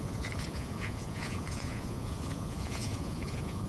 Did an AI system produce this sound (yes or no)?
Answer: yes